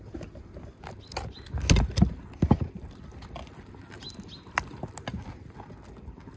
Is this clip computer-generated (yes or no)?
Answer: no